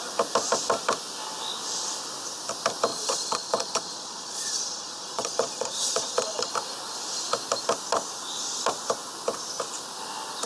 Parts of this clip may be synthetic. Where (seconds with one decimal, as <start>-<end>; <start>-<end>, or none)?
2.9-6.5